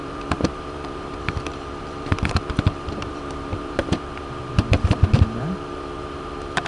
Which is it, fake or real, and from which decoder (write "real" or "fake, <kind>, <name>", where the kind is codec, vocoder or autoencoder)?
fake, vocoder, BigVGAN v2